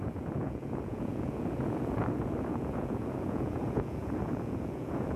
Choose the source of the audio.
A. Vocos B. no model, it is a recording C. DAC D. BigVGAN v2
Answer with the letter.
A